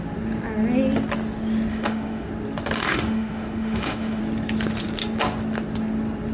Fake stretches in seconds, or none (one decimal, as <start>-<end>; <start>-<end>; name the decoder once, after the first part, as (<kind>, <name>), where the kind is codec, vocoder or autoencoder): 1.7-2.3 (autoencoder, DAC-VAE); 2.8-4.2